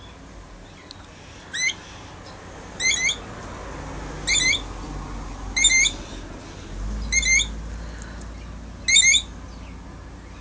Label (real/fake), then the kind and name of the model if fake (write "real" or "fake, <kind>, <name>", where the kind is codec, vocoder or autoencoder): real